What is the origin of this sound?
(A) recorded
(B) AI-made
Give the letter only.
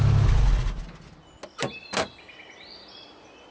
A